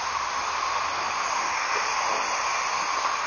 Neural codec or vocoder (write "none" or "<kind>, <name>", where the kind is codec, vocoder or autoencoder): none